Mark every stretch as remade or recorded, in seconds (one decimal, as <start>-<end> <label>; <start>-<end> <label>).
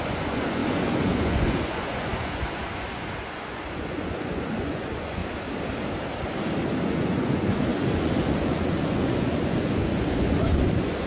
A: 0.0-5.2 remade; 5.2-6.8 recorded; 6.8-11.1 remade